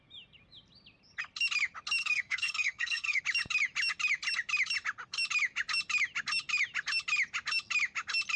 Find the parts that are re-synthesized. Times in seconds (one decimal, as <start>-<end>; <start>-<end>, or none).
2.0-3.2